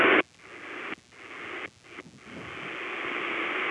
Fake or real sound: real